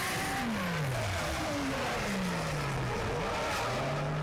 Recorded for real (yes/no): yes